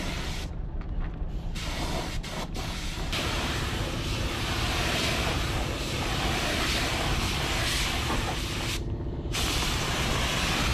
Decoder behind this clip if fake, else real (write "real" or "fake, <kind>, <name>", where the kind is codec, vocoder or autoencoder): fake, vocoder, BigVGAN v2